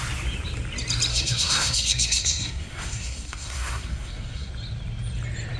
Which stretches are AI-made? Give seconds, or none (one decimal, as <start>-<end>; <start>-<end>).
1.1-4.5